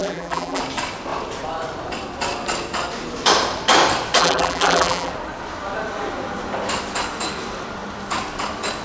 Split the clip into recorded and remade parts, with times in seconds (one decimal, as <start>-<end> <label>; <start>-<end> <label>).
0.0-0.6 remade; 0.6-4.2 recorded; 4.2-5.1 remade; 5.1-8.8 recorded